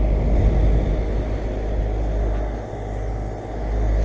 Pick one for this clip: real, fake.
real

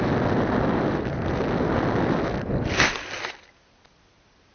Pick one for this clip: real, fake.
real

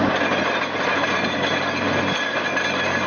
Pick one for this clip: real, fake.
real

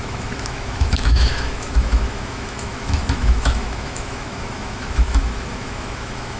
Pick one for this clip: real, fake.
fake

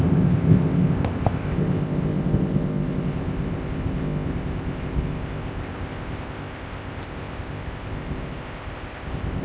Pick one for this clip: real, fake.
fake